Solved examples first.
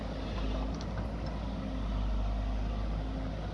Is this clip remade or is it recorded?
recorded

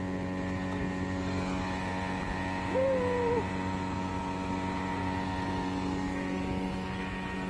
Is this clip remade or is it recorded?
recorded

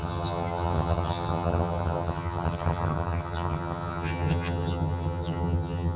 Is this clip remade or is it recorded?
remade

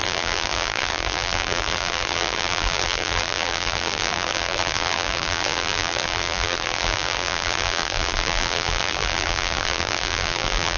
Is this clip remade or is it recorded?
remade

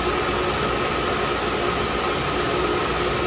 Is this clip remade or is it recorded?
recorded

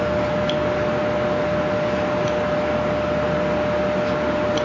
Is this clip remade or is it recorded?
recorded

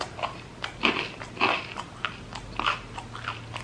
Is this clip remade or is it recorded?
recorded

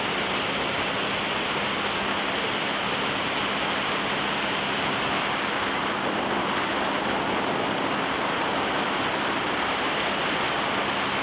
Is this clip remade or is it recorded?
recorded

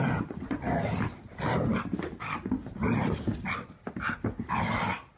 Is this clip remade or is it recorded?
recorded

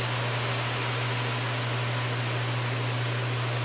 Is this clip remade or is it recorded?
recorded